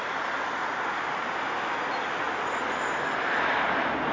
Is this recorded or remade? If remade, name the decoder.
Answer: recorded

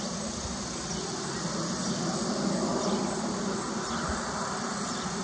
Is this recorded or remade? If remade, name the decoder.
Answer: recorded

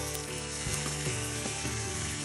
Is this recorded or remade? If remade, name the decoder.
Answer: remade, codec, SNAC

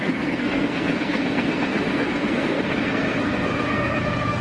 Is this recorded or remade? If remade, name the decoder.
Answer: remade, codec, SNAC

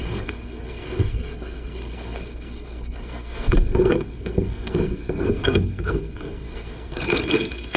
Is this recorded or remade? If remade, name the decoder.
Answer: remade, codec, SNAC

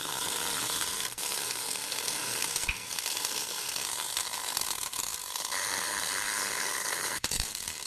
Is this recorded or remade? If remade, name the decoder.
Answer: remade, codec, SNAC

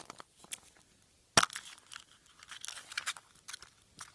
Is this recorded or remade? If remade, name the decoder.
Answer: recorded